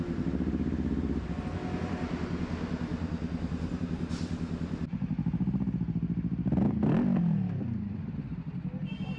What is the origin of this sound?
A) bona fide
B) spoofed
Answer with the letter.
A